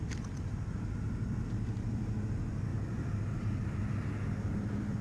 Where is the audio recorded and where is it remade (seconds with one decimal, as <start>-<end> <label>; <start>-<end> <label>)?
0.0-5.0 recorded